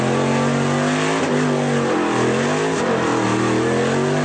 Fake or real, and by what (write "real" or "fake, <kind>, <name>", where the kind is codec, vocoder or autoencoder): real